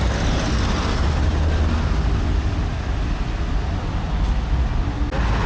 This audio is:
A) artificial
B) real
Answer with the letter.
B